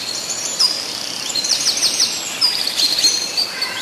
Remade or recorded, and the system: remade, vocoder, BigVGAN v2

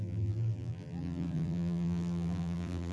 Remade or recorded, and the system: remade, vocoder, BigVGAN v2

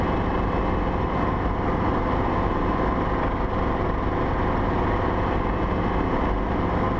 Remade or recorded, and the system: recorded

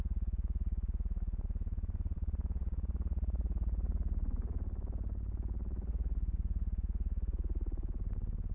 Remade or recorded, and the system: remade, vocoder, BigVGAN v2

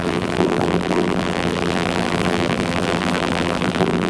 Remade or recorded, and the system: remade, vocoder, BigVGAN v2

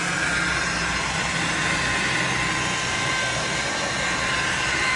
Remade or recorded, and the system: recorded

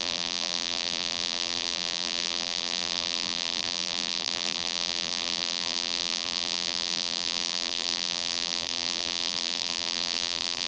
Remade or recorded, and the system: remade, vocoder, BigVGAN v2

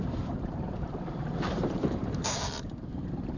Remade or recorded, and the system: remade, vocoder, BigVGAN v2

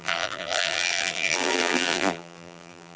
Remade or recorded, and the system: remade, vocoder, BigVGAN v2